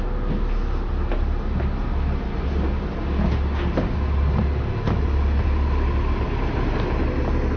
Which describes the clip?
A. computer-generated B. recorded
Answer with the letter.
B